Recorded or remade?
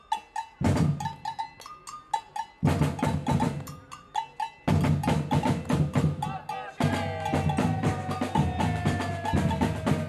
recorded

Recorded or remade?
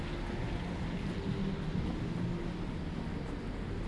recorded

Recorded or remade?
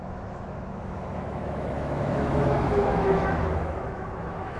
remade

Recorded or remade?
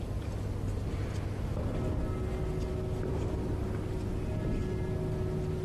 recorded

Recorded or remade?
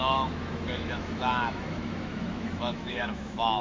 remade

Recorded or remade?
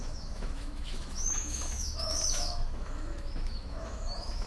remade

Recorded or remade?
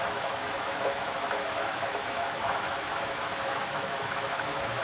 remade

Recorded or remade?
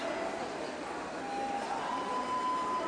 recorded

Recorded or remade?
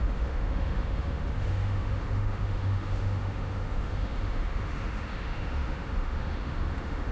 remade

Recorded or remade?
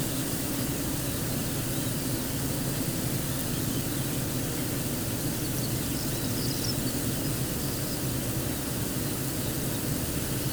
recorded